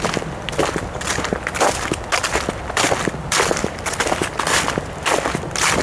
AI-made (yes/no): no